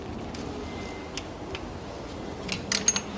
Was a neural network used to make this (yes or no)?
no